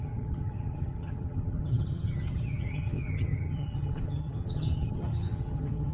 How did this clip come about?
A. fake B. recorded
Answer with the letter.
A